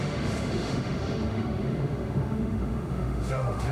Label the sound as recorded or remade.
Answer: remade